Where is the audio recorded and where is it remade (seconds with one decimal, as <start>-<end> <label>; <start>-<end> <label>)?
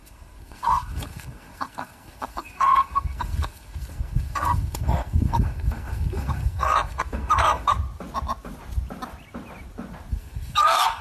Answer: 0.0-7.7 remade; 7.7-10.1 recorded; 10.1-11.0 remade